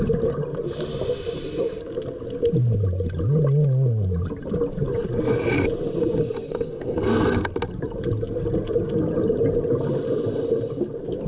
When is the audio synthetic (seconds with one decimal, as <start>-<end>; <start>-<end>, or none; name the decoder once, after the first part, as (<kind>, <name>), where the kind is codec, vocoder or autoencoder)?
6.5-7.5 (codec, SNAC)